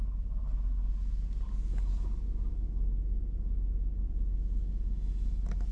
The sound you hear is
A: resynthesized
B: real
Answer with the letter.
B